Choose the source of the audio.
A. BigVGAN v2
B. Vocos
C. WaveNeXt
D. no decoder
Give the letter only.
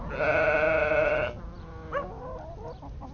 D